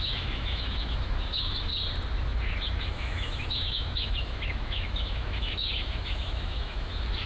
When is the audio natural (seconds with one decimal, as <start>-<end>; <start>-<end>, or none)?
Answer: 1.7-2.6